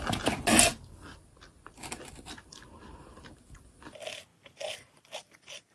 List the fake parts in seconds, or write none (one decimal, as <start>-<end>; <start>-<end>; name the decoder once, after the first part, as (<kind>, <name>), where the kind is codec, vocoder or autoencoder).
none